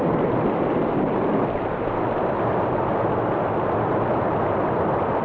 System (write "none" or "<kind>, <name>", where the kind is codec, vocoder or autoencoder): none